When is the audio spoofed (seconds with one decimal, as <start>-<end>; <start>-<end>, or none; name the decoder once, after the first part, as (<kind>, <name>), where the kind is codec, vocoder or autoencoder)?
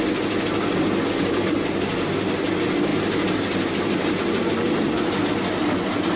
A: none